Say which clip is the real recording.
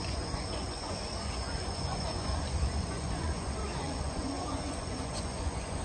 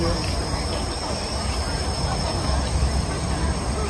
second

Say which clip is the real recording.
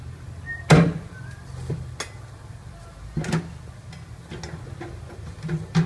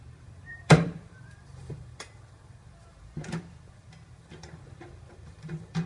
first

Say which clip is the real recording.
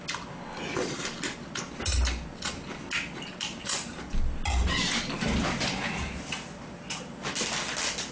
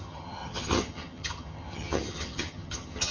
first